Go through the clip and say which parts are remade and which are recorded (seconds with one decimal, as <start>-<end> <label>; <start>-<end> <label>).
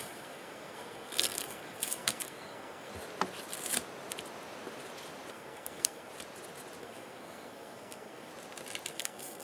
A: 0.0-2.9 remade; 2.9-5.3 recorded; 5.3-6.1 remade; 6.1-6.8 recorded; 6.8-8.3 remade; 8.3-8.9 recorded; 8.9-9.4 remade